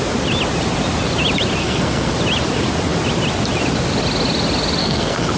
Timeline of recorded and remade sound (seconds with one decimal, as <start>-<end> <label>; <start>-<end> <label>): 0.0-1.6 recorded; 1.6-2.1 remade; 2.1-4.8 recorded; 4.8-5.4 remade